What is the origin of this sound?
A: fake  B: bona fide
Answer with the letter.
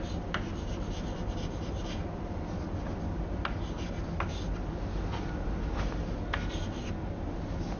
B